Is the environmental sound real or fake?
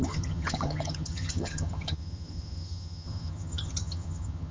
fake